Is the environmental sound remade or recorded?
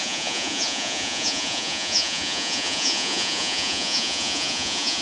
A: remade